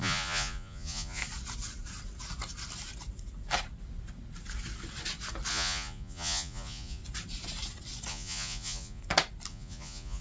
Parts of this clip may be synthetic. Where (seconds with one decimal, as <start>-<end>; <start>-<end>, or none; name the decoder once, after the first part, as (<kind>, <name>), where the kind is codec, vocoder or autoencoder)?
0.0-1.2 (vocoder, Vocos); 5.5-7.0; 8.1-9.0; 9.5-10.2